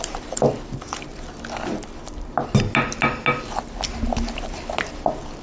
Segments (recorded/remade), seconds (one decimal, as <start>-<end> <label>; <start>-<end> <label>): 0.0-5.4 recorded